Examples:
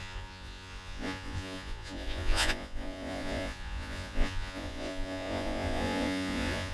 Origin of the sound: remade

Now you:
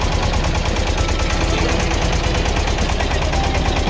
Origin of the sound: recorded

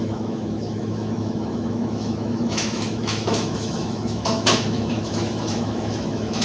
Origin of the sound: remade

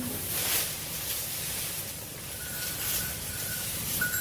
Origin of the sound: recorded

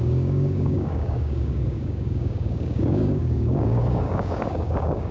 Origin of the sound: remade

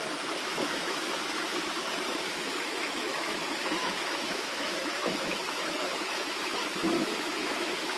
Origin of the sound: remade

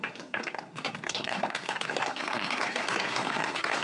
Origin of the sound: remade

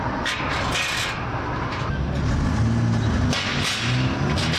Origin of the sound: recorded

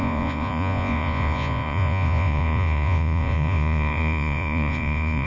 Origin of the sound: remade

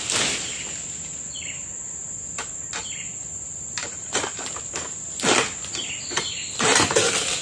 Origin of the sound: recorded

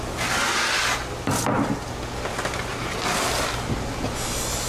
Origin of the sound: recorded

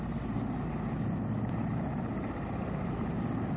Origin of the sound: recorded